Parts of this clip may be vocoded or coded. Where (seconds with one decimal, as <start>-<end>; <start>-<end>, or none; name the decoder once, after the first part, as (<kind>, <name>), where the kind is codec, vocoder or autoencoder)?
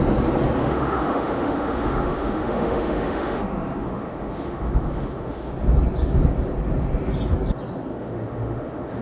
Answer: 0.6-5.5 (autoencoder, DAC-VAE); 7.9-9.0